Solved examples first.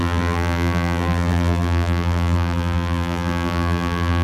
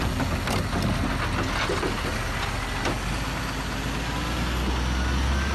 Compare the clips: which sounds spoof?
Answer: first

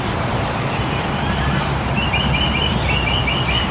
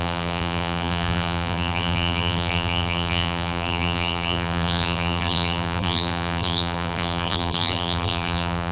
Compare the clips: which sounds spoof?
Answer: second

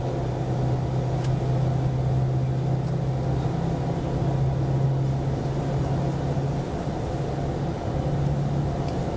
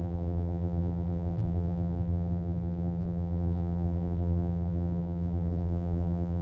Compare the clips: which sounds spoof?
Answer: second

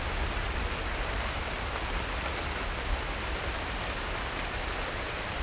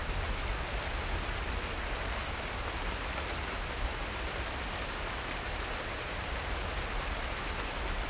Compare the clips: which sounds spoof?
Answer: first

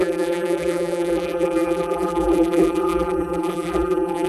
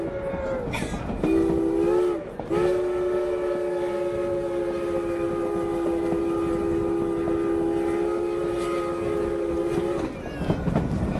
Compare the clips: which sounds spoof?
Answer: first